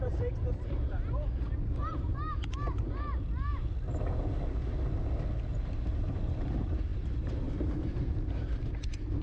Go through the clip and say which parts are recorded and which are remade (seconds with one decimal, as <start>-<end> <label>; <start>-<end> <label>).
0.0-3.1 remade; 3.1-5.6 recorded; 5.6-9.2 remade